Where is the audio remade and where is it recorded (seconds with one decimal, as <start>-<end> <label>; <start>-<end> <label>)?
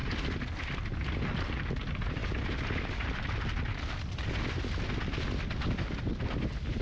0.0-6.8 recorded